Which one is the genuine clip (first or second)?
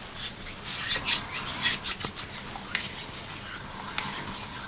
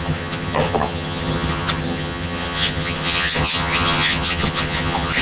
first